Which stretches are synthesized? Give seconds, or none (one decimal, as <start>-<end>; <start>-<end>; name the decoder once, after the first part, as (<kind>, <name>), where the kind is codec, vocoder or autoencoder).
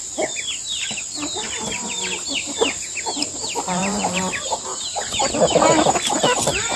1.6-4.2 (vocoder, BigVGAN v2)